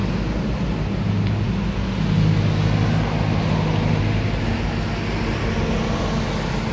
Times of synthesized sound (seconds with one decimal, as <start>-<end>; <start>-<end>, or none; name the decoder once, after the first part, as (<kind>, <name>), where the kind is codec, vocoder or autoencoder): none

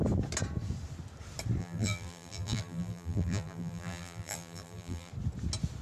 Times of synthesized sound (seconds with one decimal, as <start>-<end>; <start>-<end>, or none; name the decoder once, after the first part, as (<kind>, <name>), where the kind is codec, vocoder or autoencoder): 1.6-5.1 (vocoder, BigVGAN v2)

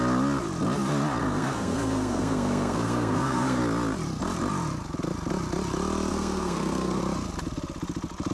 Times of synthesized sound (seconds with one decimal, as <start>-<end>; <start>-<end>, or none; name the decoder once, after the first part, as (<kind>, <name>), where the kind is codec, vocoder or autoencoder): 1.2-3.6 (codec, SNAC); 6.1-7.0

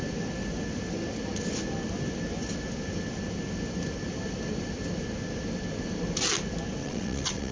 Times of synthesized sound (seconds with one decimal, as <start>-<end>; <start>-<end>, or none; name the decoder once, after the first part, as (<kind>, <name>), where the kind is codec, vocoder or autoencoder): 6.8-7.5 (vocoder, WaveNeXt)

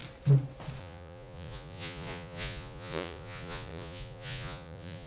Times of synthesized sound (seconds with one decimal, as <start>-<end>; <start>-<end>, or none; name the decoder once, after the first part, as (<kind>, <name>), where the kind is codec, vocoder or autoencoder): 0.8-5.1 (vocoder, Vocos)

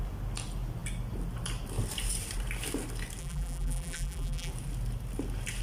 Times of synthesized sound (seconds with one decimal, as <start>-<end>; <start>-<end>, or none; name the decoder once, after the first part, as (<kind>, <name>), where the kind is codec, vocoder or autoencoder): 3.2-4.5 (vocoder, BigVGAN v2)

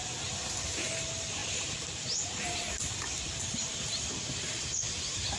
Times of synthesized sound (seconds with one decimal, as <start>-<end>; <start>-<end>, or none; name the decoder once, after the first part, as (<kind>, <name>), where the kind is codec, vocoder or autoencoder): none

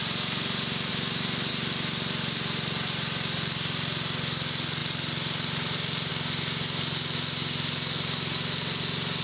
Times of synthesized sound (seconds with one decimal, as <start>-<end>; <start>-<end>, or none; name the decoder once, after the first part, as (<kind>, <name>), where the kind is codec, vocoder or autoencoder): 0.9-1.5 (vocoder, BigVGAN v2); 4.8-6.1